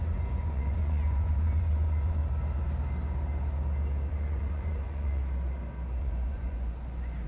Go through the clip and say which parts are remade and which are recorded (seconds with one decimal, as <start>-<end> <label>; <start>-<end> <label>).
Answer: 0.0-2.2 remade; 2.2-4.1 recorded; 4.1-5.2 remade; 5.2-6.0 recorded; 6.0-7.3 remade